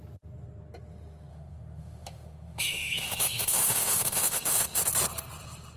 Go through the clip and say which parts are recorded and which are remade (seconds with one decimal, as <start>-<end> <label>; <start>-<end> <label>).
0.0-1.3 recorded; 1.3-4.8 remade; 4.8-5.8 recorded